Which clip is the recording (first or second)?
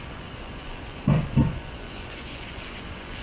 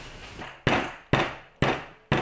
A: second